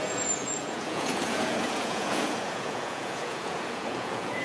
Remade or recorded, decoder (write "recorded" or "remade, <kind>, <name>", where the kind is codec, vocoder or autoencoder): remade, vocoder, Vocos